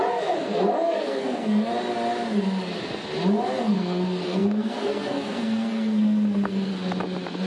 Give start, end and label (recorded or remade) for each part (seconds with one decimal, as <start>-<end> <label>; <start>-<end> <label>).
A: 0.0-1.7 remade; 1.7-3.6 recorded; 3.6-6.7 remade; 6.7-7.5 recorded